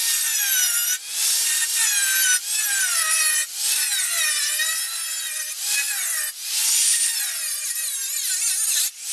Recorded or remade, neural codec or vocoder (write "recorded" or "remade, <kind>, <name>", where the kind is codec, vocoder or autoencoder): recorded